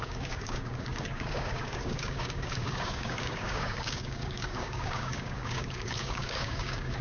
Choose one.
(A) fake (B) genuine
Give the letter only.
A